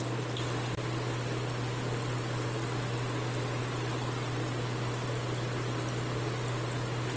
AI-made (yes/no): yes